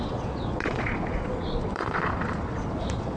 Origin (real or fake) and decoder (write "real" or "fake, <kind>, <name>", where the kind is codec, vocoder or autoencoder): fake, vocoder, Vocos